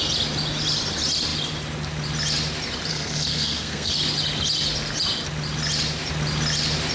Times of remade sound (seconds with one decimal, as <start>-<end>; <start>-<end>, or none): 2.9-3.9